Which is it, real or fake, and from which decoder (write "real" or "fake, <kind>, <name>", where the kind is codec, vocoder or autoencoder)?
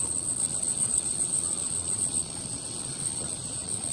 fake, vocoder, Vocos